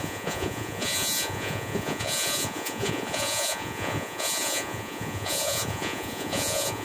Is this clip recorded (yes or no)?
no